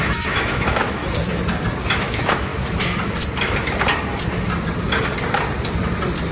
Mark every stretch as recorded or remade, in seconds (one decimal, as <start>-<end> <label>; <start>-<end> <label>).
0.0-1.0 remade; 1.0-2.0 recorded; 2.0-2.5 remade; 2.5-6.3 recorded